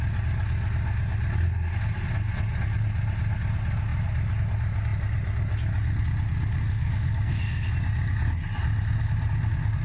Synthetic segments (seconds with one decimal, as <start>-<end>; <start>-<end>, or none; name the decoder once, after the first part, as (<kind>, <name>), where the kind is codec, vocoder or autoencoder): 6.6-7.7 (codec, SNAC)